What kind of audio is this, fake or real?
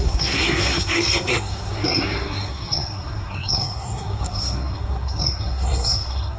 fake